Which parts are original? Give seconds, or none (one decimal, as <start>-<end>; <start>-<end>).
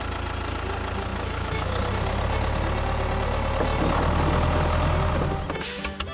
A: 0.0-1.1; 1.8-6.1